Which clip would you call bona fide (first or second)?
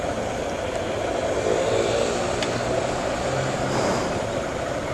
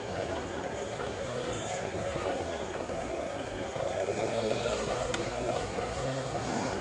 first